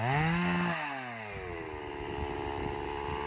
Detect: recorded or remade recorded